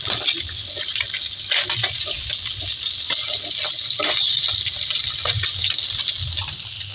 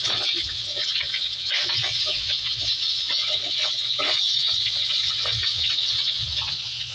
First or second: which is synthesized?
second